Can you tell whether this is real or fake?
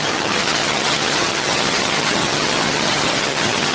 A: fake